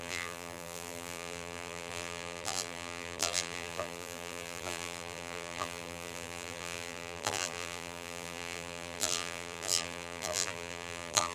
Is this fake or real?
fake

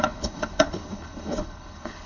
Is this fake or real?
fake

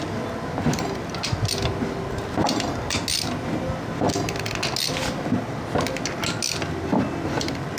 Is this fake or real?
real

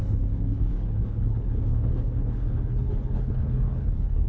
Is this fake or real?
fake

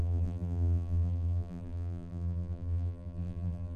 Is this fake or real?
fake